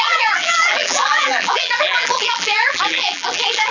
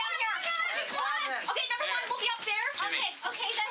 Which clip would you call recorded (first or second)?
second